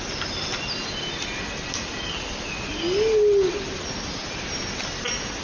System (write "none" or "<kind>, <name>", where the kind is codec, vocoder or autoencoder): none